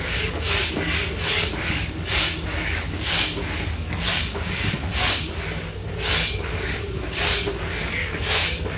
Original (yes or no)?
no